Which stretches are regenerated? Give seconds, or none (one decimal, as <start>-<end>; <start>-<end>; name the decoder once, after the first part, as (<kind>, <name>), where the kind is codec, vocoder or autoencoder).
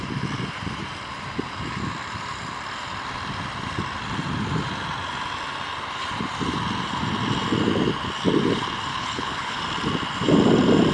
8.9-9.6 (codec, HILCodec)